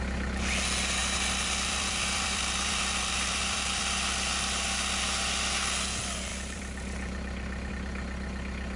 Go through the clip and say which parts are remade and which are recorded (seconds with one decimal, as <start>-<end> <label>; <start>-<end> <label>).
0.0-1.0 recorded; 1.0-3.8 remade; 3.8-6.3 recorded; 6.3-7.7 remade; 7.7-8.8 recorded